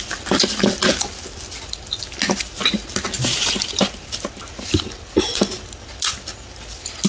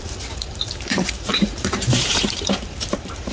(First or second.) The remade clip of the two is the second